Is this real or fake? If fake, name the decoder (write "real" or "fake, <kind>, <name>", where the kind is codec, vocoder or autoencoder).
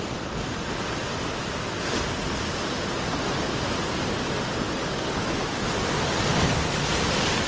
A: real